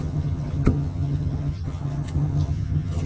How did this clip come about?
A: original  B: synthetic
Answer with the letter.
B